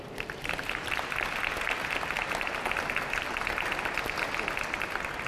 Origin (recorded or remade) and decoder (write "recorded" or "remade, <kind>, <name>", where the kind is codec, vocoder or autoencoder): recorded